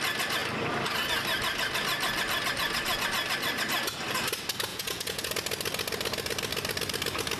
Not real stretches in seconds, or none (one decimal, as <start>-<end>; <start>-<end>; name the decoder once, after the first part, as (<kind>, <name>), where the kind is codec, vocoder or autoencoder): 4.7-5.3 (vocoder, Vocos)